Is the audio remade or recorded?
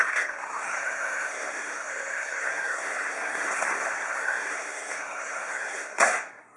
remade